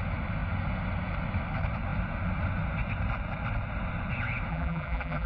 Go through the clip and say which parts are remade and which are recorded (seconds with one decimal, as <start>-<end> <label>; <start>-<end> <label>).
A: 0.0-4.5 recorded; 4.5-5.3 remade